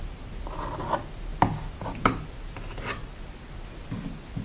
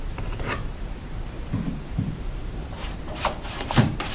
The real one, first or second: first